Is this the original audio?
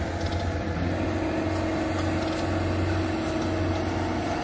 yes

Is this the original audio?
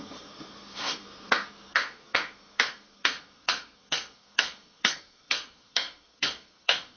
no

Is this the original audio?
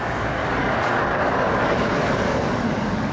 no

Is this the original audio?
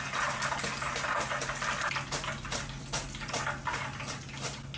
yes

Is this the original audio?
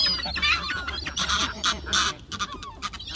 yes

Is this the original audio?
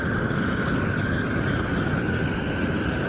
yes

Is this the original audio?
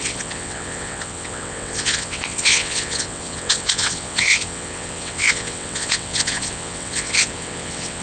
no